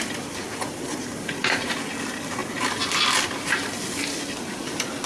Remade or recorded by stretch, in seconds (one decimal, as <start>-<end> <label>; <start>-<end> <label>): 0.0-5.1 recorded

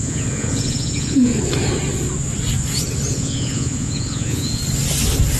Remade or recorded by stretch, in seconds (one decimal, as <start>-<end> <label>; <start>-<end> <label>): 0.0-1.3 remade; 1.3-3.1 recorded; 3.1-4.6 remade; 4.6-5.4 recorded

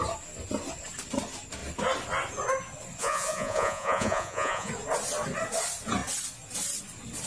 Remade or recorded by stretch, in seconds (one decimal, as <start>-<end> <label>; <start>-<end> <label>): 0.0-3.0 recorded; 3.0-4.7 remade; 4.7-7.3 recorded

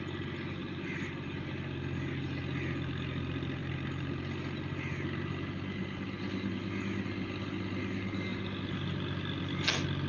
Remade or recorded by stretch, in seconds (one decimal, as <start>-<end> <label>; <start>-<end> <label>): 0.0-10.1 recorded

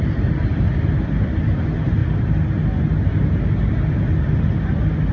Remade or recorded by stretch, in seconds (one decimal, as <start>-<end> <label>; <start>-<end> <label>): 0.0-5.1 recorded

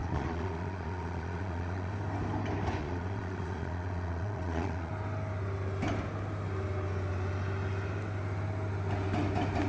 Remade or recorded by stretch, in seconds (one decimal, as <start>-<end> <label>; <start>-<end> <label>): 0.0-1.9 remade; 1.9-2.8 recorded; 2.8-4.9 remade; 4.9-9.7 recorded

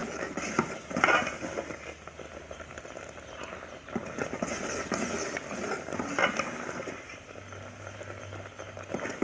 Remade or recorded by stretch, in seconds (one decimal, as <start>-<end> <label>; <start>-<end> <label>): 0.0-9.2 recorded

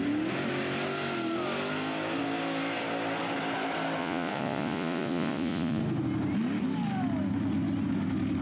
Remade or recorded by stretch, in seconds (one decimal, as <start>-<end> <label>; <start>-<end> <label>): 0.0-4.0 recorded; 4.0-5.8 remade; 5.8-8.4 recorded